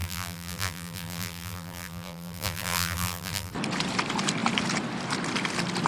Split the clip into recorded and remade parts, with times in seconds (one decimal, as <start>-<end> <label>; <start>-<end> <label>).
0.0-3.5 remade; 3.5-5.9 recorded